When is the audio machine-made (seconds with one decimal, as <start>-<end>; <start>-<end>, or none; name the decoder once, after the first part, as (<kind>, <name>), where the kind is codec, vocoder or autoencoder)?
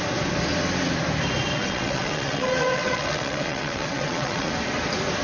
1.5-4.5 (vocoder, WaveNeXt)